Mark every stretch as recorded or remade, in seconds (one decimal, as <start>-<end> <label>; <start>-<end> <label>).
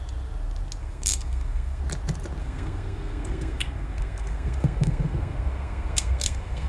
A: 0.0-0.8 recorded; 0.8-1.8 remade; 1.8-2.4 recorded; 2.4-6.7 remade